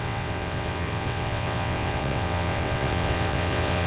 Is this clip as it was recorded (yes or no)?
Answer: no